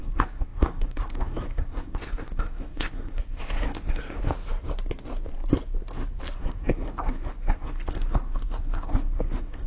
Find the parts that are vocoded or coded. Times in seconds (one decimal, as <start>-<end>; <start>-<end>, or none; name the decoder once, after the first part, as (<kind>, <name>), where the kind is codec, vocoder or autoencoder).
0.0-4.2 (codec, SNAC); 6.4-9.7